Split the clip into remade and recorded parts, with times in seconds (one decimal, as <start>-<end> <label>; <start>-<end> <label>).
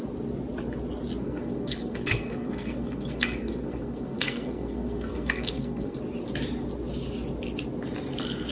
0.0-1.2 recorded; 1.2-6.0 remade; 6.0-8.5 recorded